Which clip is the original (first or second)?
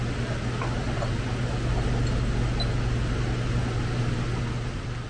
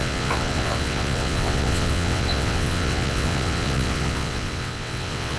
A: first